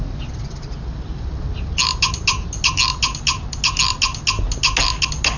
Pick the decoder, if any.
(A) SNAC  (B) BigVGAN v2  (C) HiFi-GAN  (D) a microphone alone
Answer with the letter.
D